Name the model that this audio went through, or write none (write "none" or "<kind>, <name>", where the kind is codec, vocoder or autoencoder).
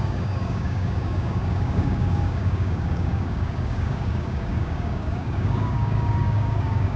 codec, DAC